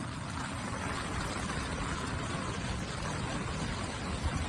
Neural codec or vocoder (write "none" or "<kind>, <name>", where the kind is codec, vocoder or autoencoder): none